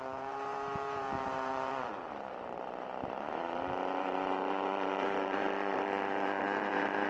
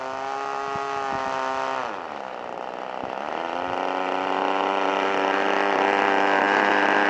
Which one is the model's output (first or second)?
first